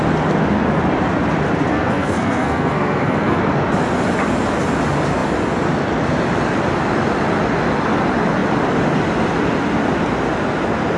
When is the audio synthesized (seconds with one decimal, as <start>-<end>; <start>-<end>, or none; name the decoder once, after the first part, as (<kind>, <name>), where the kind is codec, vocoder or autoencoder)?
1.7-3.4 (codec, SNAC)